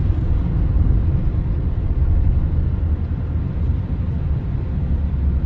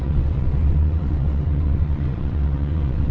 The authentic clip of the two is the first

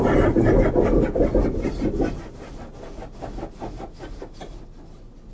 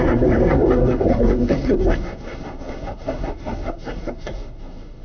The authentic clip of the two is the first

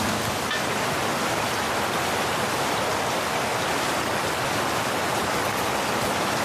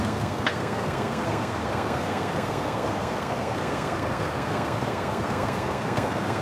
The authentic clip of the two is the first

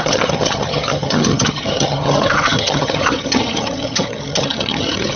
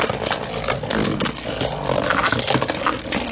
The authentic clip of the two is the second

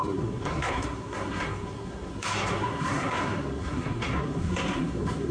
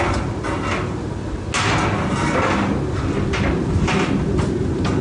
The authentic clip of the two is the second